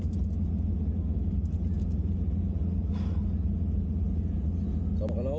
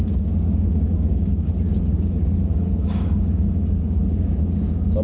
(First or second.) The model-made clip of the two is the second